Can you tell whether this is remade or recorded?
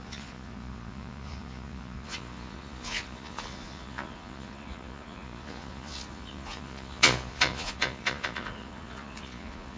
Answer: remade